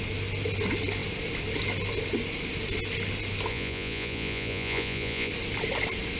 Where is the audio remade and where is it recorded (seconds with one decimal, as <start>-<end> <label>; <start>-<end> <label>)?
0.0-3.5 recorded; 3.5-5.3 remade; 5.3-6.2 recorded